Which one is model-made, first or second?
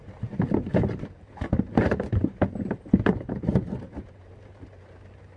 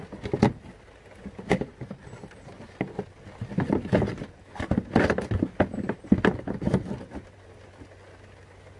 first